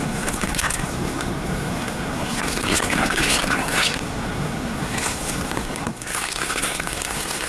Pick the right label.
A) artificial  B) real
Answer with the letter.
A